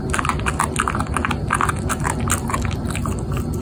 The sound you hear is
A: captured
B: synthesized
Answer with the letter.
A